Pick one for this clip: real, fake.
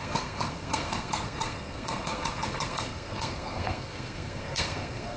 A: fake